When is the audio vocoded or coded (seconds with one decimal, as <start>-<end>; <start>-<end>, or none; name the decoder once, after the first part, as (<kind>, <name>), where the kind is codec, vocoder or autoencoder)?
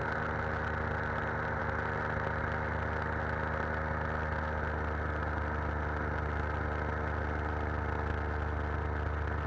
none